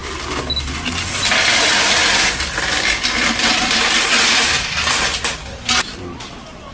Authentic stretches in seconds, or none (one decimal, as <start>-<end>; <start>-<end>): 0.0-1.3; 2.0-2.6